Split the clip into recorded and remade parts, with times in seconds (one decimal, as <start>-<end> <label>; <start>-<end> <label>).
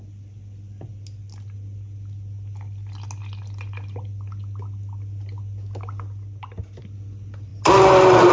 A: 0.0-8.3 recorded